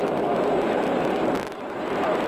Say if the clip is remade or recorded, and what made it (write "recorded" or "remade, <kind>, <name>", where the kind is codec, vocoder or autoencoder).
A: recorded